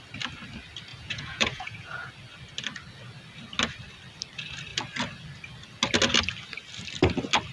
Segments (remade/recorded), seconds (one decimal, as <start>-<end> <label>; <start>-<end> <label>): 0.0-0.9 recorded; 0.9-2.1 remade; 2.1-7.5 recorded